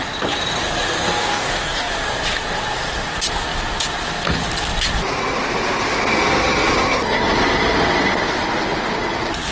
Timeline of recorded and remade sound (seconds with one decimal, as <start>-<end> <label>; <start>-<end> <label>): 0.0-1.2 recorded; 1.2-1.9 remade; 1.9-9.5 recorded